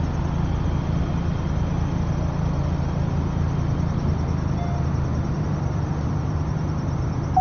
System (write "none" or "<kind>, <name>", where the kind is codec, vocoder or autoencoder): none